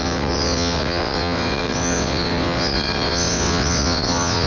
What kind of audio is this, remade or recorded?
remade